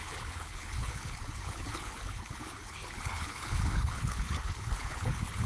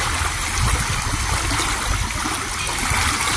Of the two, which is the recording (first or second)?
second